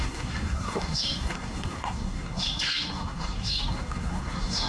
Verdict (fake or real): fake